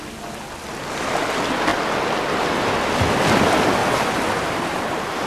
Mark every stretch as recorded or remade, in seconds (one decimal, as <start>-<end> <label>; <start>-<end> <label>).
0.0-3.8 recorded; 3.8-4.8 remade; 4.8-5.3 recorded